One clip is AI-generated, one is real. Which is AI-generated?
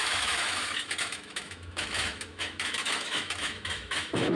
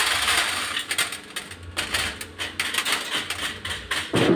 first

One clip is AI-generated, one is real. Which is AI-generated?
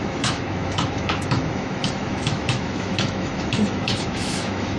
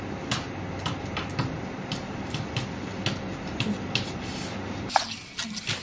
first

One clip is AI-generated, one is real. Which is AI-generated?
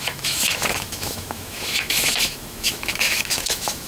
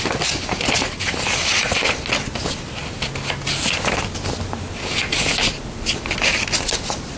first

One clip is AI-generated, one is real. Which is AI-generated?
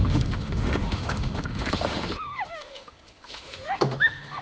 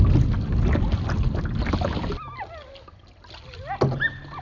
first